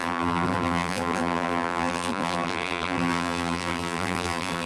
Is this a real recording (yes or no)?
no